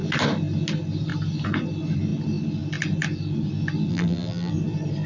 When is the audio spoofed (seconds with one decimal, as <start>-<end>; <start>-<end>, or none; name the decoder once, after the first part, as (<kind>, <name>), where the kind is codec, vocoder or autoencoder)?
3.9-4.5 (vocoder, BigVGAN v2)